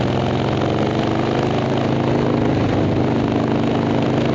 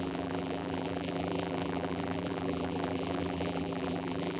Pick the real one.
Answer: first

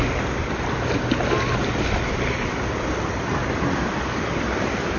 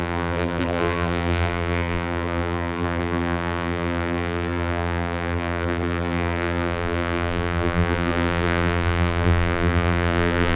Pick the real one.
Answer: first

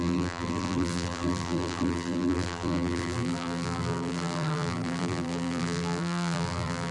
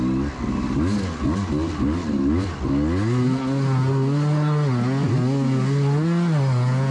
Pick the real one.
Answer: second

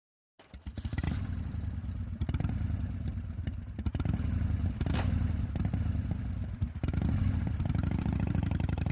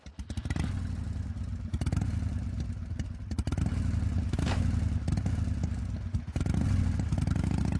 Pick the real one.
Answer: second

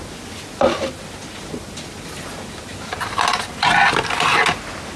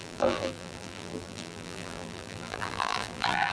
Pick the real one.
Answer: first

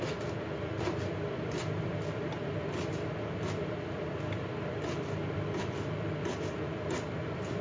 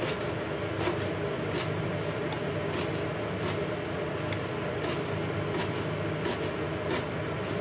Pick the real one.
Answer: second